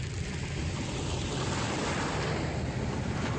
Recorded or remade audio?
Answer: recorded